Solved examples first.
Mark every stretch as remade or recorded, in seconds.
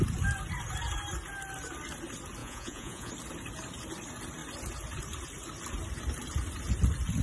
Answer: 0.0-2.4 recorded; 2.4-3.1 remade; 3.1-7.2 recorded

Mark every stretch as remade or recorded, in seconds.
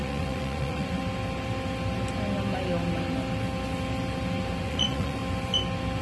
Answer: 0.0-1.0 remade; 1.0-4.6 recorded; 4.6-5.2 remade; 5.2-6.0 recorded